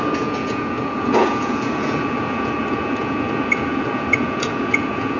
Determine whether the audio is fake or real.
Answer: fake